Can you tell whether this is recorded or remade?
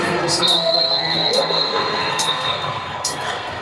remade